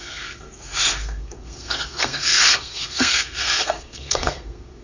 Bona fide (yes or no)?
no